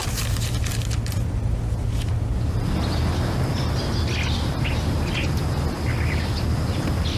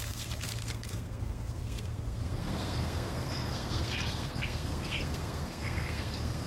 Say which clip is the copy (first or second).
second